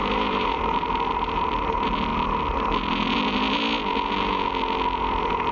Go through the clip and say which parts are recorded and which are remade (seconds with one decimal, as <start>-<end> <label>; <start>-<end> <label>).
0.0-0.6 remade; 0.6-5.5 recorded